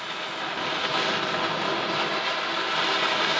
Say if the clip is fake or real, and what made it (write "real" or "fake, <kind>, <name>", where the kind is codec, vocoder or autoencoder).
real